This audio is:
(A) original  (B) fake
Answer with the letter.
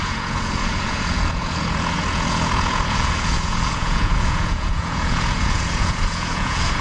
B